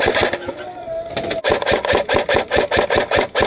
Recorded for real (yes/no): yes